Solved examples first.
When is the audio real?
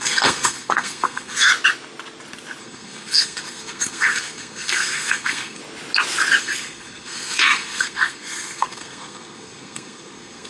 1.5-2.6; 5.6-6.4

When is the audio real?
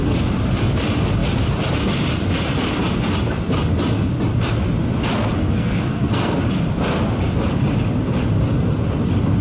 0.0-5.4; 6.4-9.4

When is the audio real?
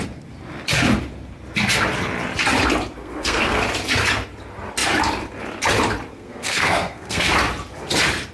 0.0-3.0; 3.6-6.1; 7.3-8.3